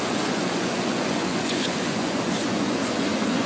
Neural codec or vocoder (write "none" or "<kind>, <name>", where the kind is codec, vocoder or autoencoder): vocoder, Vocos